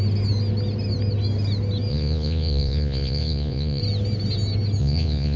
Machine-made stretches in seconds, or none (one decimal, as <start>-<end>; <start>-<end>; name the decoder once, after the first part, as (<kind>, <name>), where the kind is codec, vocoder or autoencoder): 1.9-3.8 (vocoder, Vocos); 4.8-5.4